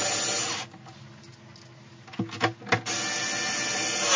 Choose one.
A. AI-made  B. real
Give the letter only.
B